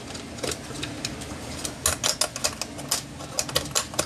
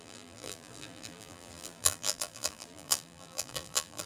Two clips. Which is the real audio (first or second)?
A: first